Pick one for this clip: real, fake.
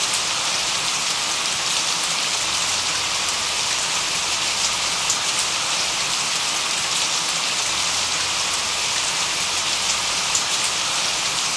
real